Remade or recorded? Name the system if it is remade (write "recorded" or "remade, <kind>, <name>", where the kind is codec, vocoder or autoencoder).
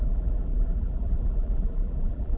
remade, vocoder, BigVGAN v2